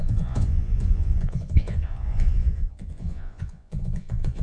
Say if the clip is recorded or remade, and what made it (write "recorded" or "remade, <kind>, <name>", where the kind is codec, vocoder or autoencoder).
remade, vocoder, Vocos